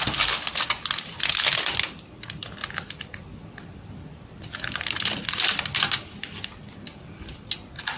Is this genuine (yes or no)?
yes